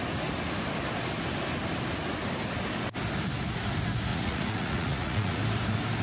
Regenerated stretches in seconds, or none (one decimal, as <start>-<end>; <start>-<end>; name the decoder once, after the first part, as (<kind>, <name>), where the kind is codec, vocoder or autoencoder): 4.1-5.4 (vocoder, Vocos)